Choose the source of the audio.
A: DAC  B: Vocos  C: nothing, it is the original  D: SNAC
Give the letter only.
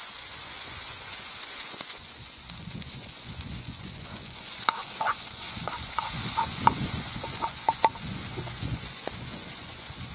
B